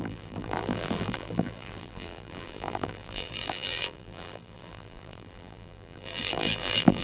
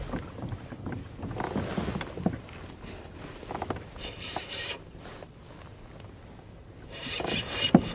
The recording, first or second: second